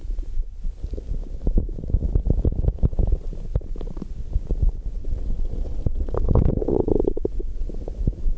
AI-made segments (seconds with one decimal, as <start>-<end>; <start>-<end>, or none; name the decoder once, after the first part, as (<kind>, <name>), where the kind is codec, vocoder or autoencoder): 5.0-7.7 (vocoder, WaveNeXt)